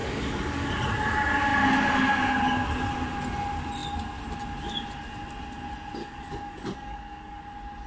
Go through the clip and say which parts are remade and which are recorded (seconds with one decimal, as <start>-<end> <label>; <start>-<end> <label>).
0.0-0.7 remade; 0.7-6.0 recorded; 6.0-7.4 remade; 7.4-7.9 recorded